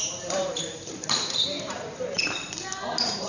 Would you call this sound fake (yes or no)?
yes